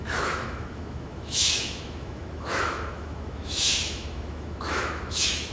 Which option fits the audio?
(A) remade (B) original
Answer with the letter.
A